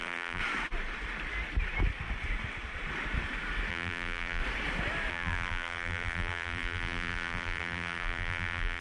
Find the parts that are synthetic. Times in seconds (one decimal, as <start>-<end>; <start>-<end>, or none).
0.0-0.4; 3.7-4.4; 5.1-8.8

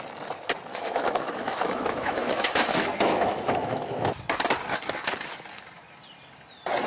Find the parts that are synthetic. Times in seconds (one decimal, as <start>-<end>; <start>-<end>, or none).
0.7-4.1

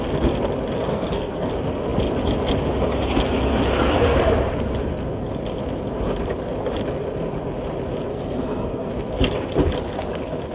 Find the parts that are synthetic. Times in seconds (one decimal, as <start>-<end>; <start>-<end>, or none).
0.9-1.5; 8.1-8.9

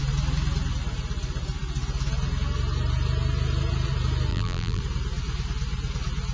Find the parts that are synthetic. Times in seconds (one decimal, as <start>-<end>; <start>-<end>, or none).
4.3-4.8